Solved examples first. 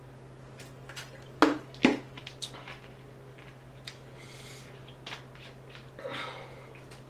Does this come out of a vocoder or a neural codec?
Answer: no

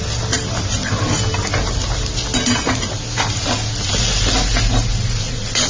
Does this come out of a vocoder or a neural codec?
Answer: no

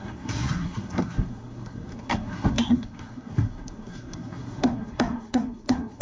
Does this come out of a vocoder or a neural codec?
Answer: yes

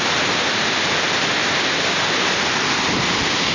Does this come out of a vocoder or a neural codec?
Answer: no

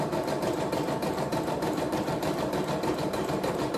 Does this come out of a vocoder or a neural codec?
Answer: yes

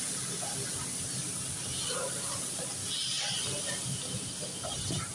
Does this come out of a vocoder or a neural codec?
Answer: no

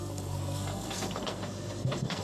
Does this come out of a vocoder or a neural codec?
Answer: yes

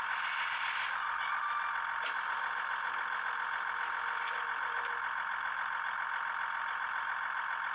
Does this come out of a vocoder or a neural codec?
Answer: no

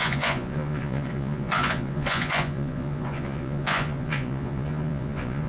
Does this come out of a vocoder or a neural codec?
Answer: yes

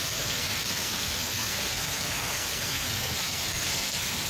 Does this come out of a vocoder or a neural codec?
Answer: yes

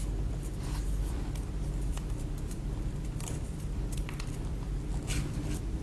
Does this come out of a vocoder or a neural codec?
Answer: yes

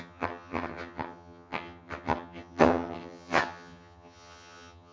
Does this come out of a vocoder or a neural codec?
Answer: yes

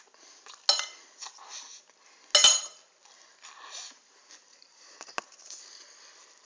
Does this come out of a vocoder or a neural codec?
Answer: no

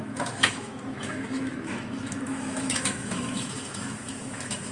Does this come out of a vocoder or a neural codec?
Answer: yes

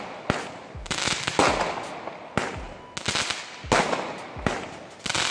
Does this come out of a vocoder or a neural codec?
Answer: no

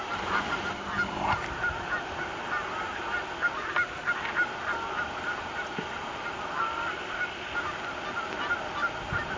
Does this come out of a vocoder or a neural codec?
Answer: no